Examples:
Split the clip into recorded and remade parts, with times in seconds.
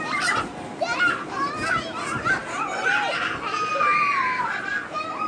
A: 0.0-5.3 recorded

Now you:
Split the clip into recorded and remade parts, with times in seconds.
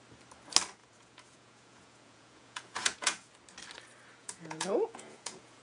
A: 0.0-0.8 recorded; 0.8-3.3 remade; 3.3-4.2 recorded; 4.2-5.6 remade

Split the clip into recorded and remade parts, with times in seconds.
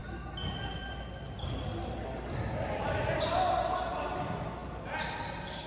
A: 0.0-5.7 recorded